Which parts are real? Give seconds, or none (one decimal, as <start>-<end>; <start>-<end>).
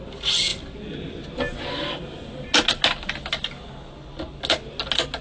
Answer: 0.0-5.2